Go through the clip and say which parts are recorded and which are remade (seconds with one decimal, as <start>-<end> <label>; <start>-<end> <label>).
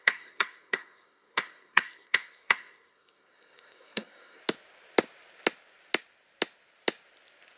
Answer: 0.0-4.4 remade; 4.4-7.6 recorded